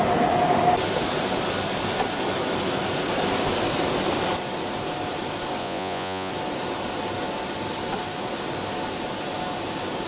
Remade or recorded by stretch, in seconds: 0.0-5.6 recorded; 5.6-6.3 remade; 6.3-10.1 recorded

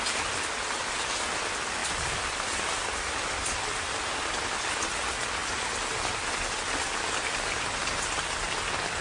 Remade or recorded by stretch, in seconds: 0.0-9.0 recorded

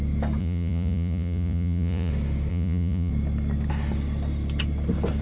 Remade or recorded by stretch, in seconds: 0.0-0.4 recorded; 0.4-2.1 remade; 2.1-2.5 recorded; 2.5-3.1 remade; 3.1-5.2 recorded